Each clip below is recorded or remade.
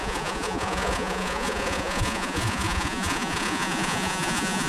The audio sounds remade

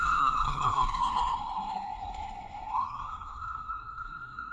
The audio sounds remade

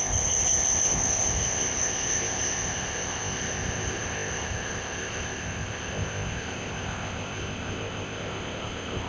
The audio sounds remade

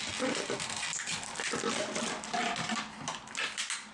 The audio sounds recorded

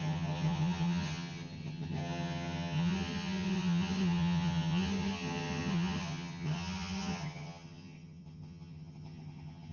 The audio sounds remade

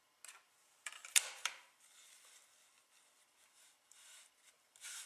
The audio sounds recorded